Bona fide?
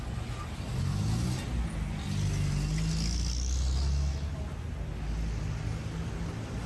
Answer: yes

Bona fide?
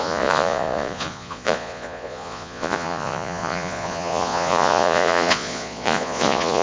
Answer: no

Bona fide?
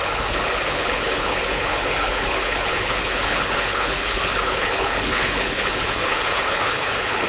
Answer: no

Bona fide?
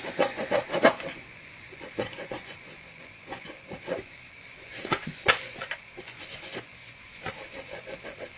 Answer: no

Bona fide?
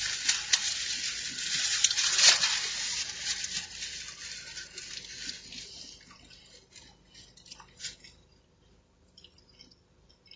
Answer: yes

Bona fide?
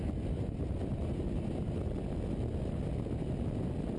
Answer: yes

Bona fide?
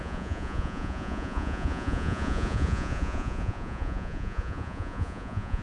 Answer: no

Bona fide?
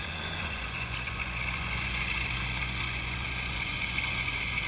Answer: no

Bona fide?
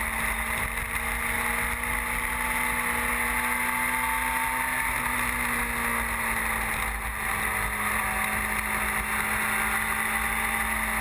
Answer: yes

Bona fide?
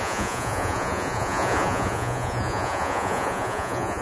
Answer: no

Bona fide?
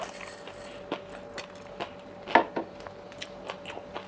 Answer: yes